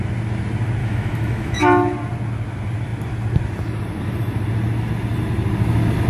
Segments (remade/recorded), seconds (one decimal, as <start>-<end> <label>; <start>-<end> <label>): 0.0-0.8 recorded; 0.8-1.6 remade; 1.6-6.1 recorded